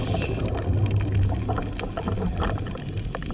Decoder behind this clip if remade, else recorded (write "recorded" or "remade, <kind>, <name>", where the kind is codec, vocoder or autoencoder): recorded